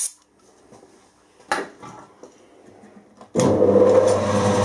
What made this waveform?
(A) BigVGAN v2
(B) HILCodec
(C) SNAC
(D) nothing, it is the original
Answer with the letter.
D